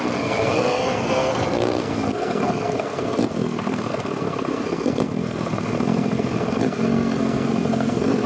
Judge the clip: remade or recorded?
remade